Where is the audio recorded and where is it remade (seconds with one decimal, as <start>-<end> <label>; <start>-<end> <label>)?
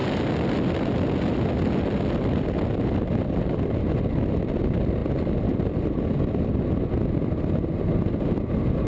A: 0.0-8.9 recorded